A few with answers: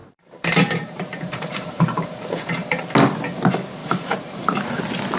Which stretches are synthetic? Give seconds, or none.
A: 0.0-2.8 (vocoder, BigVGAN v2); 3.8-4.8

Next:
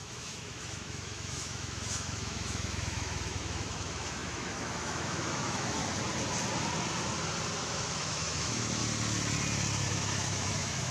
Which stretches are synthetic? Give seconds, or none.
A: 0.0-5.8 (autoencoder, DAC-VAE); 7.6-8.8; 9.9-10.9

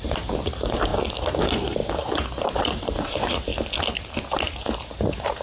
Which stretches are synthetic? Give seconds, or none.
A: 0.0-0.9 (vocoder, BigVGAN v2); 1.4-3.5; 4.3-5.4